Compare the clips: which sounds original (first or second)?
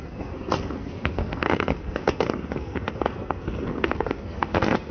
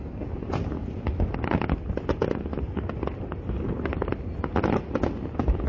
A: second